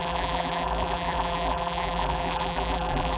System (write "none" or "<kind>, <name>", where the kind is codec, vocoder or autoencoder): vocoder, BigVGAN v2